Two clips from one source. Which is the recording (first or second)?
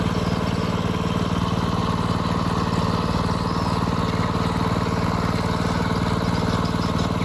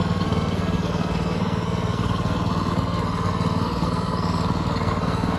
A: first